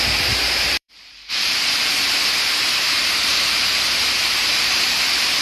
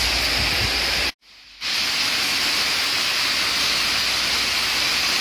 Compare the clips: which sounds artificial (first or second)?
first